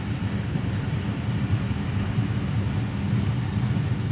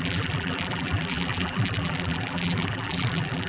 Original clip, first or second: first